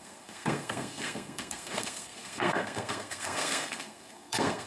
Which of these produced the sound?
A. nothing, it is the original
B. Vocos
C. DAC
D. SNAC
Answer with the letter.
D